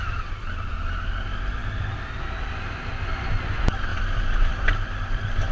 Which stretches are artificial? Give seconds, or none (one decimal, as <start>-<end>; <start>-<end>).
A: none

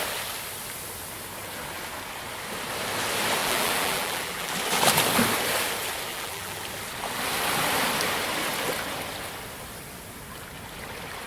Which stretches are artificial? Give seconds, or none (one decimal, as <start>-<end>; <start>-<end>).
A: 3.4-4.5; 6.1-6.6